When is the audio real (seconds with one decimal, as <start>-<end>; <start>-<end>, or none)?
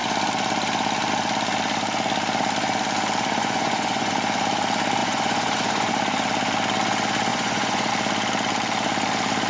0.0-3.4; 4.1-5.0; 5.9-7.3; 7.9-9.5